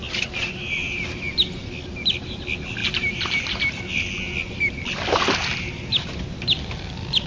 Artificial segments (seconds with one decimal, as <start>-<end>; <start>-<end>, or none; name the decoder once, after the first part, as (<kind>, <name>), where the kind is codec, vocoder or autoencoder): 2.8-3.8 (vocoder, BigVGAN v2)